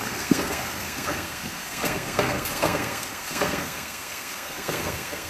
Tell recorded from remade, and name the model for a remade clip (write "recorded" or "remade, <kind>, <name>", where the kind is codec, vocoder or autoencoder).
remade, codec, SNAC